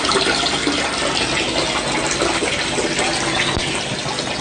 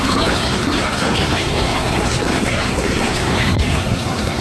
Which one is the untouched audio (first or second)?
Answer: first